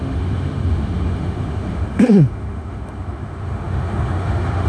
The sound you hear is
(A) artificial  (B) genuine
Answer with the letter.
A